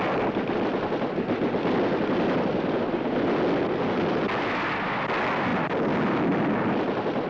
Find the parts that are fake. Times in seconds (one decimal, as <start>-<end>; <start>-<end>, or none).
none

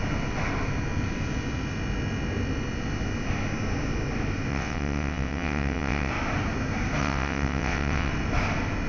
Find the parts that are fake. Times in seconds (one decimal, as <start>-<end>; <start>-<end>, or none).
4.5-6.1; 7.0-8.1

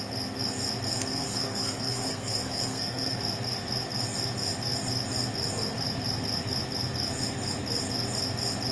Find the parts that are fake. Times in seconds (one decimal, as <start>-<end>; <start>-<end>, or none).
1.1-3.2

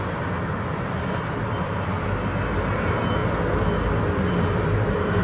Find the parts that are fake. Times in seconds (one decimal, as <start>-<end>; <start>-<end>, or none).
none

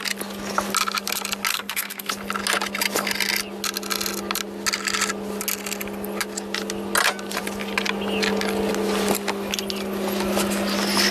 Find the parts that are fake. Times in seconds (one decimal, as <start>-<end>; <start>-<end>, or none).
1.5-2.1

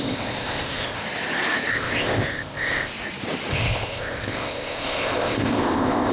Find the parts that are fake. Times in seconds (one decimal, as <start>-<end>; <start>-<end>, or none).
0.0-1.0; 1.7-2.9; 3.5-6.1

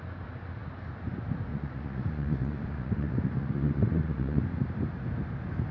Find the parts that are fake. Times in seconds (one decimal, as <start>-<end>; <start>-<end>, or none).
1.5-4.4